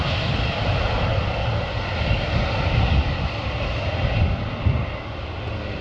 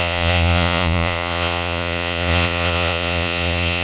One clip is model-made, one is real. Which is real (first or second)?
first